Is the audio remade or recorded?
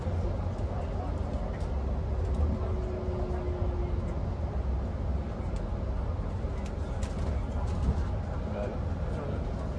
recorded